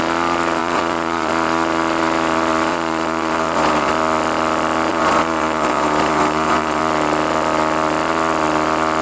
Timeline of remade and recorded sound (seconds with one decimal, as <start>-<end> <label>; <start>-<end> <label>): 0.0-0.6 recorded; 0.6-1.3 remade; 1.3-2.7 recorded; 2.7-3.9 remade; 3.9-4.9 recorded; 4.9-6.8 remade; 6.8-9.0 recorded